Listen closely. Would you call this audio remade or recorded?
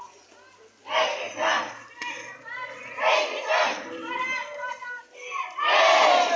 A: recorded